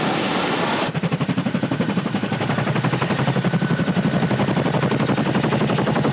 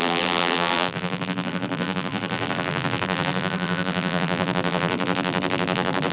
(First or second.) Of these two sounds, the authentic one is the first